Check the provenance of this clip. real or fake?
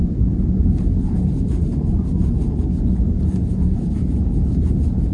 fake